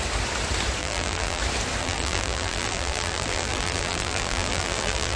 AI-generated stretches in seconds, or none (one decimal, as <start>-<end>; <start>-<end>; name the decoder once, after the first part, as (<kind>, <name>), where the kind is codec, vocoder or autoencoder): 0.8-1.4 (vocoder, BigVGAN v2); 1.8-5.2